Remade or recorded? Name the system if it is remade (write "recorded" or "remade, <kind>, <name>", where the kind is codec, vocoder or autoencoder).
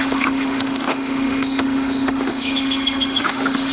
remade, autoencoder, DAC-VAE